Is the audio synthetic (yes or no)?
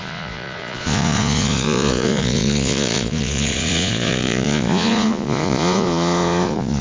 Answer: yes